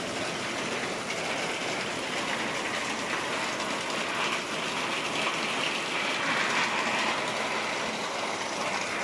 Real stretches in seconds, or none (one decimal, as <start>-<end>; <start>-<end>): 0.0-1.6; 2.2-9.0